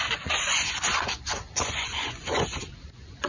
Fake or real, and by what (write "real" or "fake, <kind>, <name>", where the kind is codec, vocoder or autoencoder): fake, vocoder, Vocos